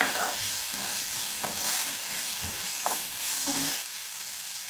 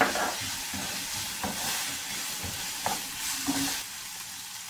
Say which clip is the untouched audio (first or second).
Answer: second